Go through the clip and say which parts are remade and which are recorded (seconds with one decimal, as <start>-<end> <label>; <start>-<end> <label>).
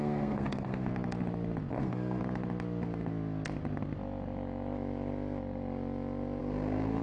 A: 0.0-0.9 remade; 0.9-1.7 recorded; 1.7-2.2 remade; 2.2-6.4 recorded; 6.4-7.0 remade